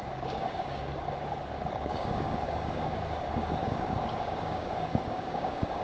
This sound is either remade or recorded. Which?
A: remade